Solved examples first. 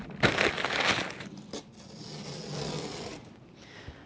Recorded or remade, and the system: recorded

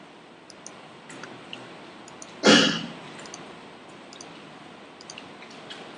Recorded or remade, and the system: recorded